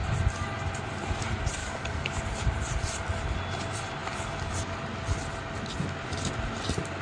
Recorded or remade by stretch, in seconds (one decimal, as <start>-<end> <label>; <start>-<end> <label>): 0.0-1.6 recorded; 1.6-2.2 remade; 2.2-7.0 recorded